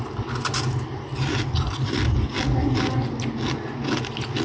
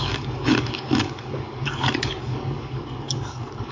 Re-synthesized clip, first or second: second